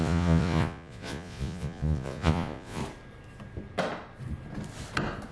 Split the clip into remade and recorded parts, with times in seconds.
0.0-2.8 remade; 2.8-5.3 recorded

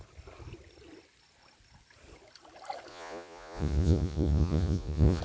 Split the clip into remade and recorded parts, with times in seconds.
0.0-2.9 recorded; 2.9-5.2 remade

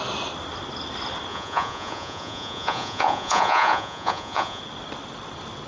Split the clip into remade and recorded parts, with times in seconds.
0.0-1.3 recorded; 1.3-4.6 remade; 4.6-5.7 recorded

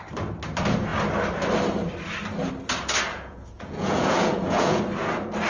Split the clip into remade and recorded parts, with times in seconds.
0.0-3.1 recorded; 3.1-4.8 remade; 4.8-5.5 recorded

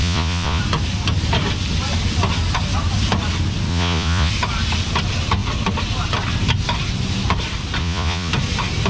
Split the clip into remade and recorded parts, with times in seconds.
0.0-0.6 remade; 0.6-3.7 recorded; 3.7-4.3 remade; 4.3-7.8 recorded; 7.8-8.3 remade; 8.3-8.9 recorded

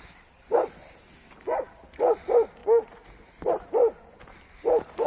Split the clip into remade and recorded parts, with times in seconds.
0.0-2.6 recorded; 2.6-3.5 remade; 3.5-5.1 recorded

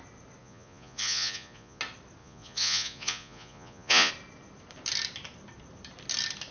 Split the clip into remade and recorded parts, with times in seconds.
0.0-0.4 recorded; 0.4-1.8 remade; 1.8-2.2 recorded; 2.2-4.1 remade; 4.1-6.5 recorded

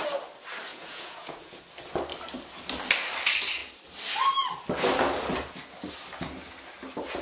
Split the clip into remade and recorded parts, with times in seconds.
0.0-0.7 recorded; 0.7-1.6 remade; 1.6-7.2 recorded